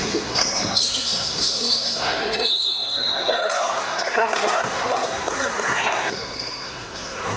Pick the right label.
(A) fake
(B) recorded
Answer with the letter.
A